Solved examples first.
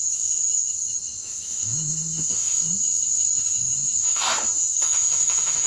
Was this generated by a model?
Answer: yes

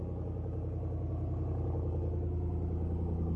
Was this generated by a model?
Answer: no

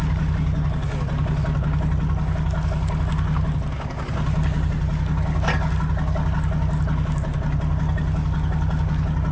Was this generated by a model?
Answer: no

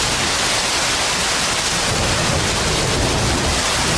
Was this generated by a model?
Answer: no